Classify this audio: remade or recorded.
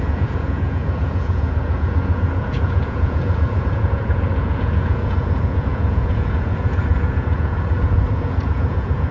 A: remade